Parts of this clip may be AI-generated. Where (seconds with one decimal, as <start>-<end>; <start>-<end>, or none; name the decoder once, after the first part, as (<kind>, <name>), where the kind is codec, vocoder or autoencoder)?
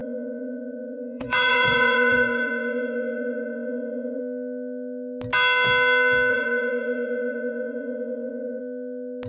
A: 0.0-4.2 (vocoder, Vocos); 6.3-8.6